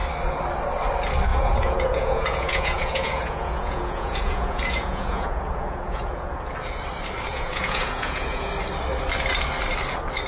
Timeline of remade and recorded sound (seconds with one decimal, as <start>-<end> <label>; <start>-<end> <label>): 0.0-1.3 recorded; 1.3-6.4 remade; 6.4-7.3 recorded; 7.3-8.5 remade; 8.5-10.3 recorded